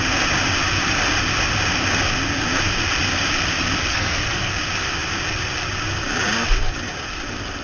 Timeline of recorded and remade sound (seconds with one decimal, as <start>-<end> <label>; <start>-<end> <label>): 0.0-3.9 recorded; 3.9-4.5 remade; 4.5-7.6 recorded

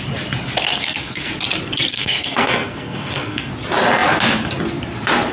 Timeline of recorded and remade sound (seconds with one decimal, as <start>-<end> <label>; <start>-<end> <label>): 0.0-0.7 recorded; 0.7-1.3 remade; 1.3-1.9 recorded; 1.9-3.5 remade; 3.5-5.3 recorded

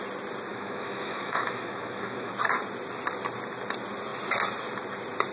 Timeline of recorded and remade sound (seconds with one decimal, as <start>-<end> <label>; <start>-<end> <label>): 0.0-0.5 recorded; 0.5-2.3 remade; 2.3-5.3 recorded

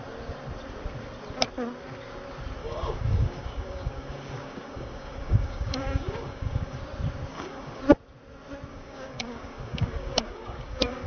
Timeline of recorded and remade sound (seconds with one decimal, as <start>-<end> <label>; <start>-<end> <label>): 0.0-2.6 recorded; 2.6-6.8 remade; 6.8-7.3 recorded; 7.3-7.8 remade; 7.8-8.7 recorded; 8.7-11.1 remade

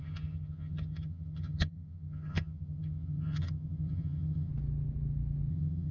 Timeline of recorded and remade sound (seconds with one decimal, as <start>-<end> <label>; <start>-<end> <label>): 0.0-4.5 remade; 4.5-5.5 recorded; 5.5-5.9 remade